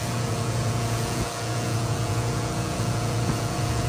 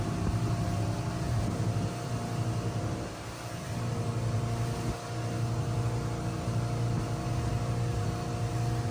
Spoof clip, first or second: first